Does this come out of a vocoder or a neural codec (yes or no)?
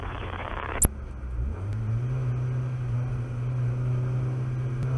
no